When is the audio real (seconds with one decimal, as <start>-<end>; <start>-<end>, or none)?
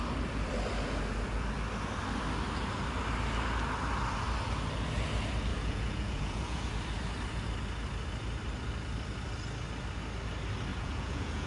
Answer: 0.0-5.5; 6.7-10.7